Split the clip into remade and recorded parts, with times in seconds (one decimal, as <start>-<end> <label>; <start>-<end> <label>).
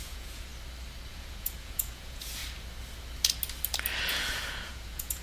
0.0-0.5 remade; 0.5-1.1 recorded; 1.1-2.4 remade; 2.4-4.1 recorded; 4.1-5.2 remade